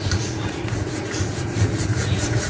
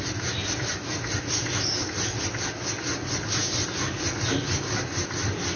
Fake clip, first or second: first